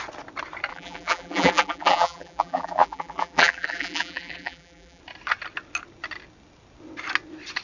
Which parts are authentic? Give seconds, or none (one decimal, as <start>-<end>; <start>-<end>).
0.0-0.7; 5.0-7.6